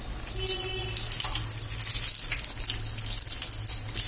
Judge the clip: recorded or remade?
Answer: recorded